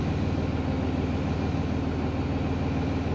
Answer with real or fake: real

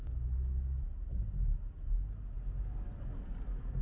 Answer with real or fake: real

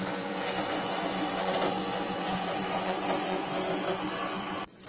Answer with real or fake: fake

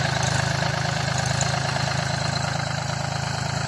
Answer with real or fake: real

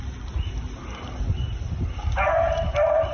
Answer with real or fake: real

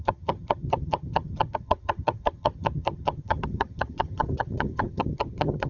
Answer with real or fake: fake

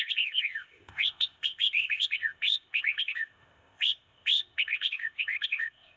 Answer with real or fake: fake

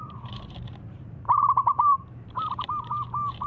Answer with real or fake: fake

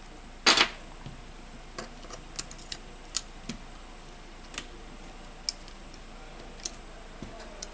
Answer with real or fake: real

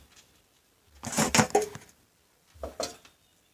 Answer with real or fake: real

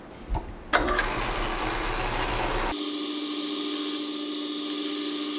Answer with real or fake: real